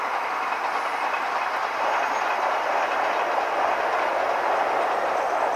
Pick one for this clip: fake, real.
real